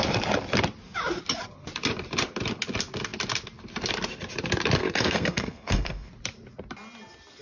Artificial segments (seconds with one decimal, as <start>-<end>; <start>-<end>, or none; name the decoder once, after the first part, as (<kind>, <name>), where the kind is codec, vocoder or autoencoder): 4.8-6.1 (codec, SNAC)